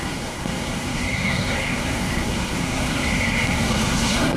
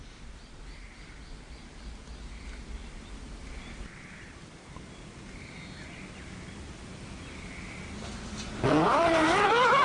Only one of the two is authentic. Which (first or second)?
second